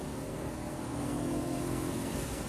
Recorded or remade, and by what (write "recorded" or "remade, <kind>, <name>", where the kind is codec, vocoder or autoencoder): remade, codec, SNAC